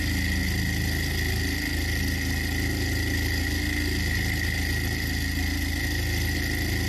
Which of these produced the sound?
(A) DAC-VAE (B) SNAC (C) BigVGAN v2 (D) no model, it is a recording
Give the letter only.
D